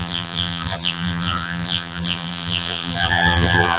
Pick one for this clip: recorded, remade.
remade